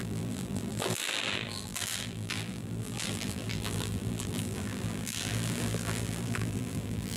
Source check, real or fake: fake